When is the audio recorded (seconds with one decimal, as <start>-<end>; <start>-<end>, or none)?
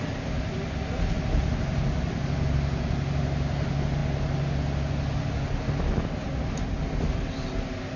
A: 0.0-8.0